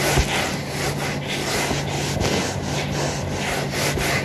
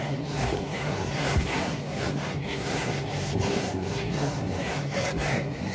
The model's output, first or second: second